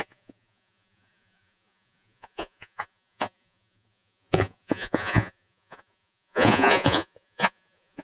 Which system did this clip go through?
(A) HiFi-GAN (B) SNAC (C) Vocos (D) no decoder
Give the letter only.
C